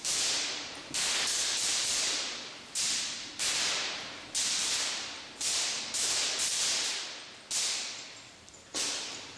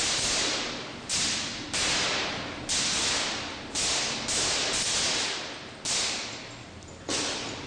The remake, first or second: first